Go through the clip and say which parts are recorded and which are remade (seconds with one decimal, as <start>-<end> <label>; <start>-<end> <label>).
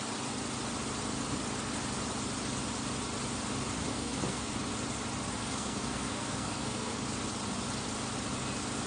0.0-3.9 recorded; 3.9-4.5 remade; 4.5-5.4 recorded; 5.4-7.0 remade; 7.0-8.9 recorded